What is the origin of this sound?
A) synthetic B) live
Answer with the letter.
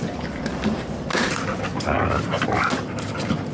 B